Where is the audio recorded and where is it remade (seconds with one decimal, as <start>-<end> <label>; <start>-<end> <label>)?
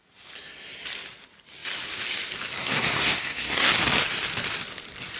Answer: 0.0-2.6 recorded; 2.6-3.7 remade; 3.7-5.2 recorded